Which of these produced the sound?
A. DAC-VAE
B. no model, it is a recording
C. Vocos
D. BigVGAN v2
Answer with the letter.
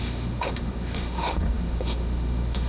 A